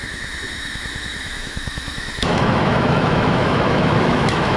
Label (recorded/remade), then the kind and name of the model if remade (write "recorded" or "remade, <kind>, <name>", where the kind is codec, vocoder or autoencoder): remade, autoencoder, DAC-VAE